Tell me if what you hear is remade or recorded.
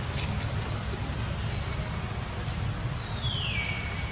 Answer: recorded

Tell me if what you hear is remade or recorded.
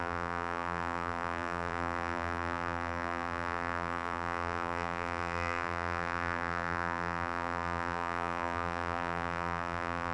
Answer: remade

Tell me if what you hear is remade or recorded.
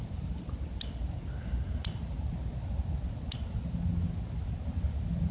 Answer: recorded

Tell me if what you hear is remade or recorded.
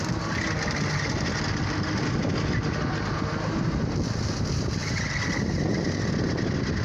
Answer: recorded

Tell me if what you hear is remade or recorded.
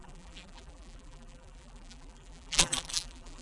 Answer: remade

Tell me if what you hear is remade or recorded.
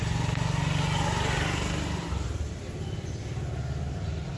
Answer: recorded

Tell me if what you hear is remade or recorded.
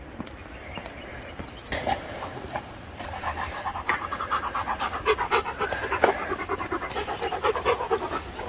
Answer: recorded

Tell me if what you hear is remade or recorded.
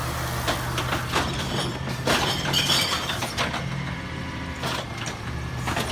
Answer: remade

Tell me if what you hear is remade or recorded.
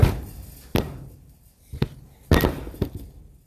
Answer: recorded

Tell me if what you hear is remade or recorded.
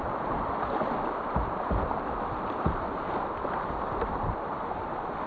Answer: recorded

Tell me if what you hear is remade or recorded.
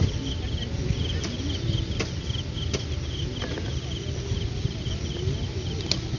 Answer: recorded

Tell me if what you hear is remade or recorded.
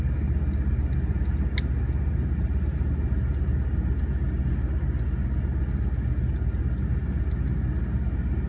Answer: recorded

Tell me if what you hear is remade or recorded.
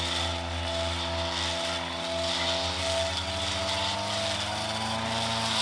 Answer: recorded